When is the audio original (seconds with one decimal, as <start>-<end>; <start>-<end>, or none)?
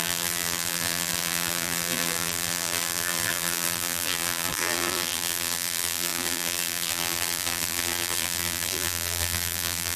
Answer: none